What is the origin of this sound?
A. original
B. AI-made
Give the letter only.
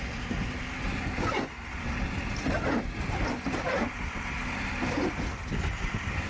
A